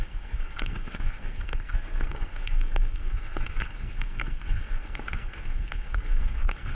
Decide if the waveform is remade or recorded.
remade